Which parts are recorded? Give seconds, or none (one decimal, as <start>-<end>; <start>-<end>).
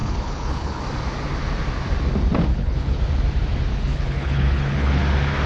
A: 0.8-2.5; 3.0-3.7; 5.0-5.5